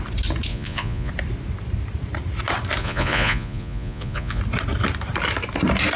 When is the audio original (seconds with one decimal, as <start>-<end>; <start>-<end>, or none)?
0.0-0.5; 1.1-2.8; 4.4-6.0